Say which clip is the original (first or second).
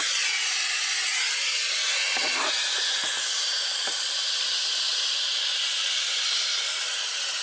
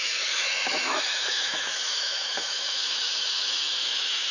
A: first